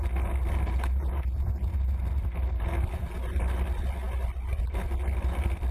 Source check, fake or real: real